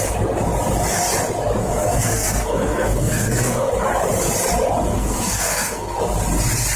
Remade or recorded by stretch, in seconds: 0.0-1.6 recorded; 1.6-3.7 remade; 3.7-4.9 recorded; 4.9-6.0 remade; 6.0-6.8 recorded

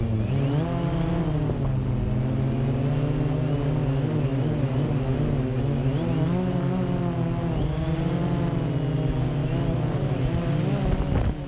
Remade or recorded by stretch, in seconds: 0.0-4.3 recorded; 4.3-4.9 remade; 4.9-9.4 recorded; 9.4-10.2 remade; 10.2-11.5 recorded

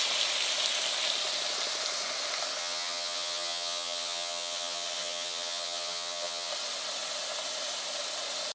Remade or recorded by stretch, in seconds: 0.0-2.6 recorded; 2.6-6.5 remade; 6.5-8.5 recorded

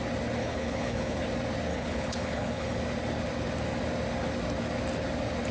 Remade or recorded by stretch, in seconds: 0.0-0.4 recorded; 0.4-1.2 remade; 1.2-1.7 recorded; 1.7-2.8 remade; 2.8-5.5 recorded

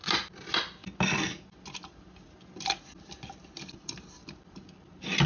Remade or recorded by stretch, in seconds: 0.0-5.3 recorded

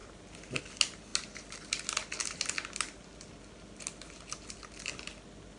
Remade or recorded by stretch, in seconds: 0.0-5.6 recorded